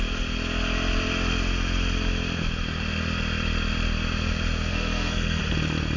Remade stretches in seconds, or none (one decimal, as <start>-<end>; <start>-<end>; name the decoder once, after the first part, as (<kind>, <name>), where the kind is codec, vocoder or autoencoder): 4.7-5.4 (codec, SNAC)